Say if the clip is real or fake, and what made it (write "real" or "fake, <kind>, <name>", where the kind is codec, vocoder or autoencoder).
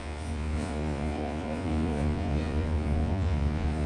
fake, vocoder, Vocos